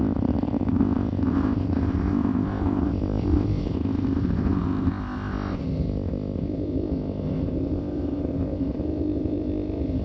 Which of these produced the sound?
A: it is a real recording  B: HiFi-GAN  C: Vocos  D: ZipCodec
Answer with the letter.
D